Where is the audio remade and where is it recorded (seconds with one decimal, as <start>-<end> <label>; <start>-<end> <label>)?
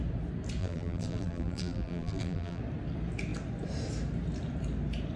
0.0-0.6 recorded; 0.6-2.6 remade; 2.6-5.2 recorded